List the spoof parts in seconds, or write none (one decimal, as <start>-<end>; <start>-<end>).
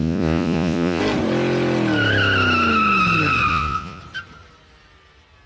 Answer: 0.0-1.0; 3.5-4.0